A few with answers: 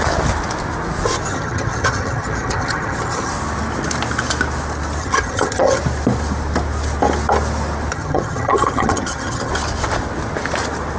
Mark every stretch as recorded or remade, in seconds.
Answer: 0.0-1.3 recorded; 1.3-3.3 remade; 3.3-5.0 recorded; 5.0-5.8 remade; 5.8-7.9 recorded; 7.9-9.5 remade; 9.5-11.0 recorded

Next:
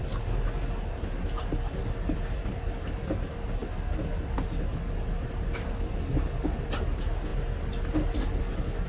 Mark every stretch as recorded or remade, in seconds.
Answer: 0.0-8.9 recorded

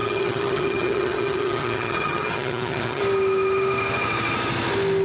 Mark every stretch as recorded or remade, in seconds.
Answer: 0.0-3.0 remade; 3.0-5.0 recorded

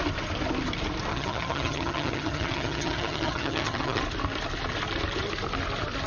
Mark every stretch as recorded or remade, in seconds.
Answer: 0.0-1.1 recorded; 1.1-4.0 remade; 4.0-6.1 recorded